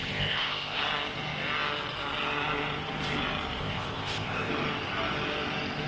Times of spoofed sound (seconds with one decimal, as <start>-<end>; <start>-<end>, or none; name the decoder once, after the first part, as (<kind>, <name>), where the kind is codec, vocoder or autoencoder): 0.0-0.8 (codec, ZipCodec); 3.6-4.5